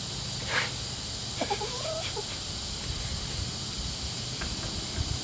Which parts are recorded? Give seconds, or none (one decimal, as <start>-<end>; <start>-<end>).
0.0-5.2